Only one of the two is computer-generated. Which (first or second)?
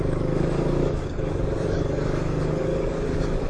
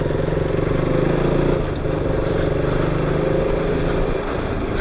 first